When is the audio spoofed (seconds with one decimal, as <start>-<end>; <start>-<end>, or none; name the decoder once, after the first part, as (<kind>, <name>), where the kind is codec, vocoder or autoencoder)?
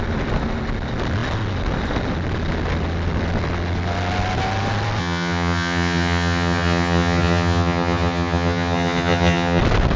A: 5.0-9.6 (vocoder, HiFi-GAN)